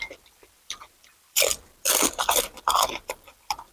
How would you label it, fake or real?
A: fake